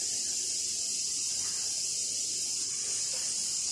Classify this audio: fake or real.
real